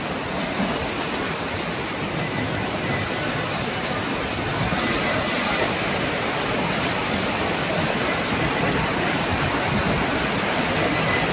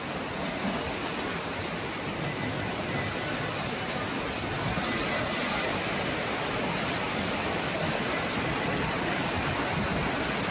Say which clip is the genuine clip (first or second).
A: second